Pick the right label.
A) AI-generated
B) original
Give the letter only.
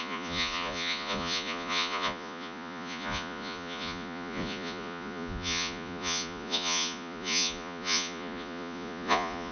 A